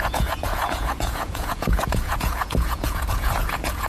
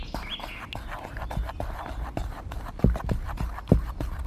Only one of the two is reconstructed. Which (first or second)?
first